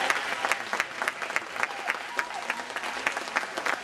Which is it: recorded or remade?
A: recorded